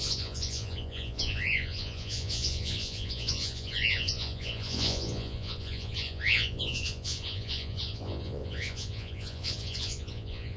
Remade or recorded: remade